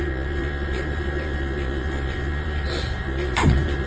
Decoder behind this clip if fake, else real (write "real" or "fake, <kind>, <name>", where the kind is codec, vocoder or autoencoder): fake, vocoder, Vocos